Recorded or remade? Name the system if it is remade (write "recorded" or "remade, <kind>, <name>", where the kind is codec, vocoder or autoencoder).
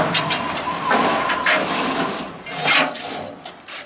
recorded